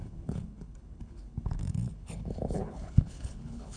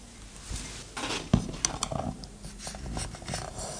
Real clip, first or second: second